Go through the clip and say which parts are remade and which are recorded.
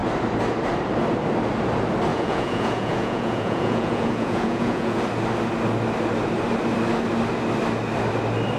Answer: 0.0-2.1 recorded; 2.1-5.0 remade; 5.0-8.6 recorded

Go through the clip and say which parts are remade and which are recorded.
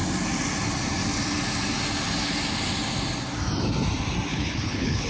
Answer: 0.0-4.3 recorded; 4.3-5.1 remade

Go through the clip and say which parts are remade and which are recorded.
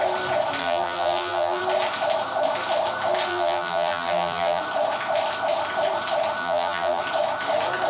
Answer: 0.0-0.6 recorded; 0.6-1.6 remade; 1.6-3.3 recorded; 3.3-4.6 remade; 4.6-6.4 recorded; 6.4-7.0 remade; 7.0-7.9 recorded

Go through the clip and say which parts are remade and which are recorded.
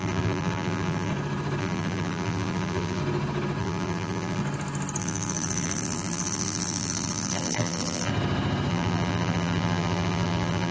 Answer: 0.0-1.1 remade; 1.1-1.6 recorded; 1.6-3.0 remade; 3.0-3.6 recorded; 3.6-4.4 remade; 4.4-5.0 recorded; 5.0-8.1 remade; 8.1-8.7 recorded; 8.7-10.7 remade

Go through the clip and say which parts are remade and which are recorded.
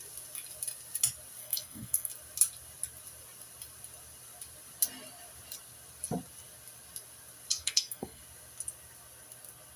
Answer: 0.0-1.4 recorded; 1.4-2.1 remade; 2.1-7.6 recorded; 7.6-8.2 remade; 8.2-9.8 recorded